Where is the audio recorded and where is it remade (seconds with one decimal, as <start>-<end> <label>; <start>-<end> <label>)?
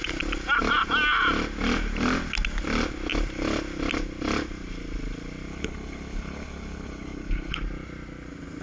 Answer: 0.0-5.5 recorded; 5.5-7.6 remade; 7.6-8.6 recorded